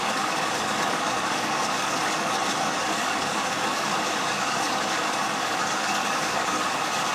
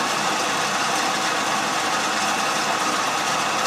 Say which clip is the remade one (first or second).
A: first